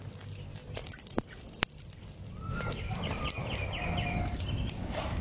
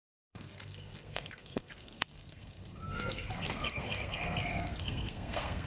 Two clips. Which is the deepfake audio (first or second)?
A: second